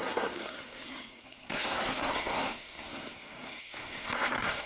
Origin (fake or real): fake